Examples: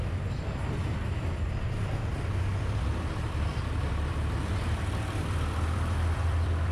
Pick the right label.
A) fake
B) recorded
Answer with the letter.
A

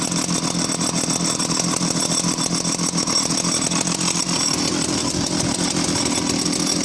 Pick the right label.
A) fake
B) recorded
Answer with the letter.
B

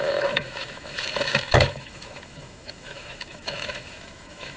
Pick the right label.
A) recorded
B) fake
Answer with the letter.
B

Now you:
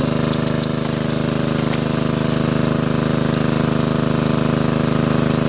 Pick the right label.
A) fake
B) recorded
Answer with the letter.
B